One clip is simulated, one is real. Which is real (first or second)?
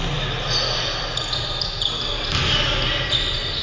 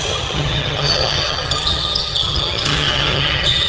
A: first